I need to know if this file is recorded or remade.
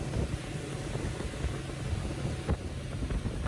recorded